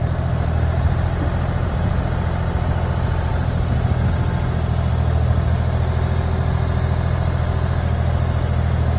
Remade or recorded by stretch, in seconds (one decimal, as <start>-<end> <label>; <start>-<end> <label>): 0.0-9.0 recorded